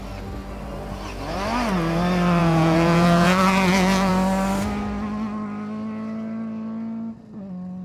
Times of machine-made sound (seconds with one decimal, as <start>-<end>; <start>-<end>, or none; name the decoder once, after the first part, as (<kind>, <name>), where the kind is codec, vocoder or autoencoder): 2.4-4.1 (vocoder, Vocos)